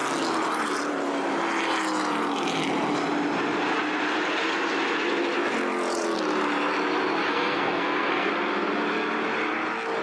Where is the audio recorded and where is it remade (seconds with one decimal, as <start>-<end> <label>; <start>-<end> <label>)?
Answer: 0.0-7.3 recorded; 7.3-8.3 remade; 8.3-10.0 recorded